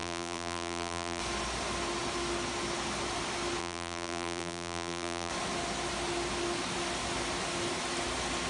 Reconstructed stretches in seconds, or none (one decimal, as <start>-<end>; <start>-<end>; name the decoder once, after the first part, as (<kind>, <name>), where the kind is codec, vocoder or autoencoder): 0.0-1.2 (vocoder, BigVGAN v2); 3.6-5.3